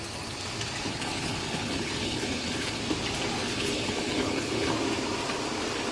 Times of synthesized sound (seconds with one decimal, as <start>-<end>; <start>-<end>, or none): 0.9-2.8; 3.4-4.7